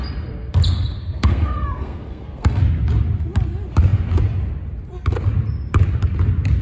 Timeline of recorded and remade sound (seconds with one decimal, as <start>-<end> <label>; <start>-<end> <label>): 0.0-1.0 recorded; 1.0-2.6 remade; 2.6-6.6 recorded